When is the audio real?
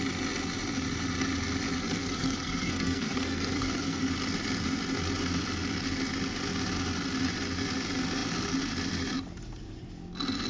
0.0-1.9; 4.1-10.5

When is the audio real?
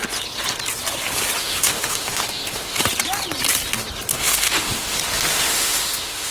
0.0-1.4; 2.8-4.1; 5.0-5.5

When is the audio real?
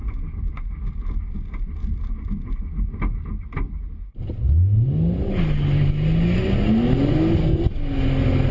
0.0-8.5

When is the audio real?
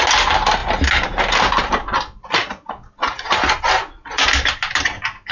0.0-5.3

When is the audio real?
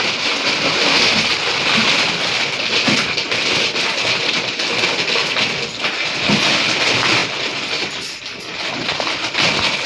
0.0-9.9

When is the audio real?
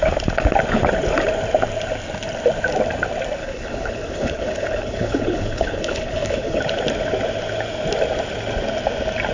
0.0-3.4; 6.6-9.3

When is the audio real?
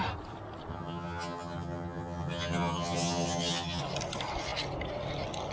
0.0-0.7; 3.8-5.5